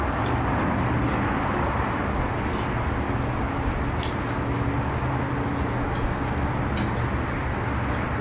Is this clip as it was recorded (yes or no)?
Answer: yes